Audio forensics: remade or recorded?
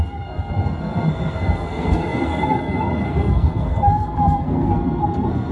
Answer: remade